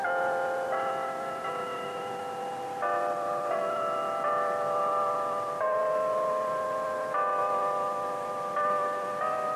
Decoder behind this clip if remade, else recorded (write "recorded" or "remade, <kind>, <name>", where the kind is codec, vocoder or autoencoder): recorded